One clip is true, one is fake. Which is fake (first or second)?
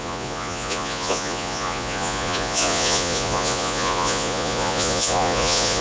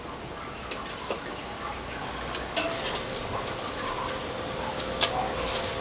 first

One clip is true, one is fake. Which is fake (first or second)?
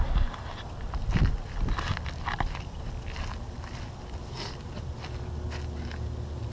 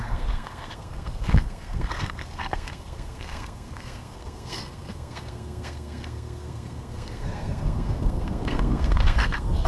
second